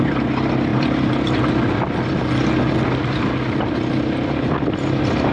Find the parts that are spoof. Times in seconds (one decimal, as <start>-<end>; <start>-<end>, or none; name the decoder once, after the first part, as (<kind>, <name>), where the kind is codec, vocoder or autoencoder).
none

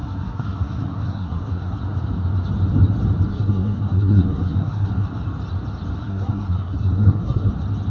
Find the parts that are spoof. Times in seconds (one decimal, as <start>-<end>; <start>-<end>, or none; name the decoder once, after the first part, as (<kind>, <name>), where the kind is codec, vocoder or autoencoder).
0.0-1.8 (codec, SNAC); 3.3-4.9; 6.0-7.5

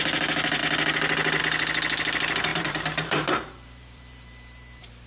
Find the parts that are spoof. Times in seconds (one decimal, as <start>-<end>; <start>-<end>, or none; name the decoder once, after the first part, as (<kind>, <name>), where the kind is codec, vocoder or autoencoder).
2.5-5.1 (vocoder, BigVGAN v2)

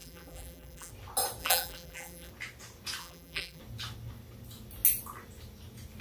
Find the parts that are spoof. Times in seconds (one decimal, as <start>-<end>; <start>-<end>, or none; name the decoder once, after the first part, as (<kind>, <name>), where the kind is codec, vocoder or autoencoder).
0.0-0.9 (vocoder, BigVGAN v2); 1.4-2.3; 3.0-3.6

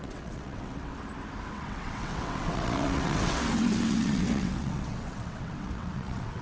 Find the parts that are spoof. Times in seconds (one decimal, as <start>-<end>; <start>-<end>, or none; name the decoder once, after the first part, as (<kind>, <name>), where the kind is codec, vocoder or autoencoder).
0.0-0.9 (vocoder, WaveNeXt); 1.5-6.4